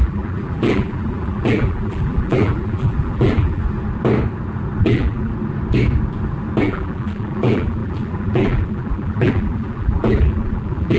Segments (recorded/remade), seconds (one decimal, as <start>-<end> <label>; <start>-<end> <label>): 0.0-3.6 remade; 3.6-4.8 recorded; 4.8-5.3 remade; 5.3-6.6 recorded; 6.6-11.0 remade